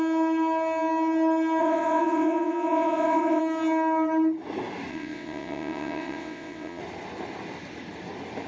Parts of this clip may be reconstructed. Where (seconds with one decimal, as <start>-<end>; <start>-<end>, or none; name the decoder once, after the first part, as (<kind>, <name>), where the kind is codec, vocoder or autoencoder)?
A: 1.6-3.4 (vocoder, WaveNeXt); 4.9-6.8